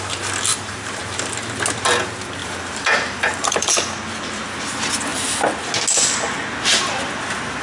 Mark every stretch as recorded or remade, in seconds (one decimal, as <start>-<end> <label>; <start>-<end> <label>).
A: 0.0-0.5 recorded; 0.5-1.0 remade; 1.0-2.4 recorded; 2.4-3.7 remade; 3.7-7.6 recorded